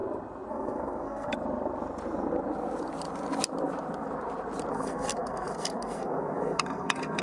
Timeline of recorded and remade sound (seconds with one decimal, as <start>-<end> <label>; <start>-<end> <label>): 0.0-0.5 recorded; 0.5-1.3 remade; 1.3-4.7 recorded; 4.7-7.2 remade